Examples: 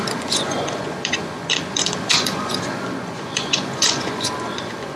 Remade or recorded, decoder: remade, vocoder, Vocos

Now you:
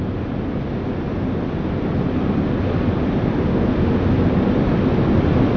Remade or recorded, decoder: recorded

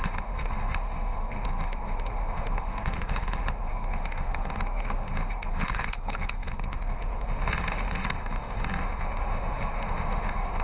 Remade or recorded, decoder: remade, autoencoder, DAC-VAE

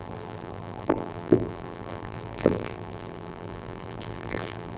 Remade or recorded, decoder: remade, vocoder, BigVGAN v2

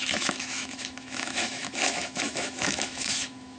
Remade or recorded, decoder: remade, autoencoder, DAC-VAE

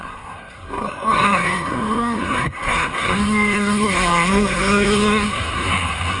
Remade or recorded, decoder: remade, codec, SNAC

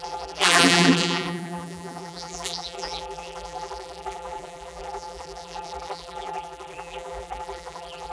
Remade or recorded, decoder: remade, vocoder, BigVGAN v2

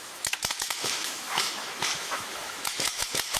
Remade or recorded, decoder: remade, autoencoder, DAC-VAE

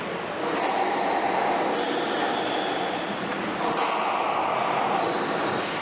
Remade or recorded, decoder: recorded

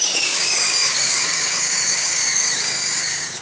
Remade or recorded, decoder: remade, codec, DAC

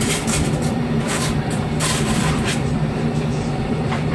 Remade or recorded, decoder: remade, vocoder, BigVGAN v2